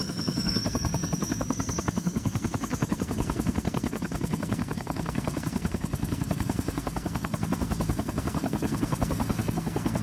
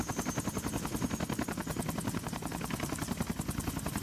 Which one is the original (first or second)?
second